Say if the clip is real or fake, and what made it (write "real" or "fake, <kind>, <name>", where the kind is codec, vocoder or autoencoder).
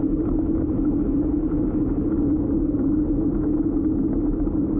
real